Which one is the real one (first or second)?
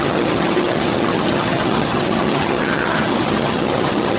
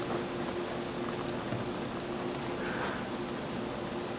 second